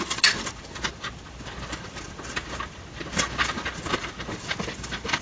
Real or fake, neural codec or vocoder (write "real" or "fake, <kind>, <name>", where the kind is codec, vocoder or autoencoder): real